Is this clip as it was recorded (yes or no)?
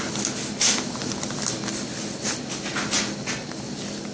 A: yes